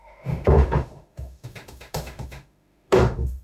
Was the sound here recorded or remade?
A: remade